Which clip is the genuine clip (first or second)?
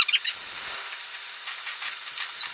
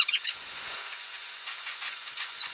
first